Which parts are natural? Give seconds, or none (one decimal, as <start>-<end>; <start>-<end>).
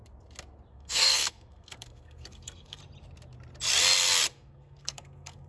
0.0-0.7; 2.8-4.3